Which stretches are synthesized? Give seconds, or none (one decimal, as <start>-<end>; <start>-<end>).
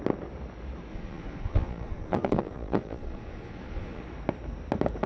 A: 0.9-4.0